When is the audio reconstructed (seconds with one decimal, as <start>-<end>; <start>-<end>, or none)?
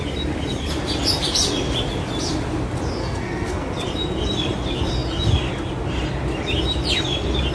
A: 3.0-3.7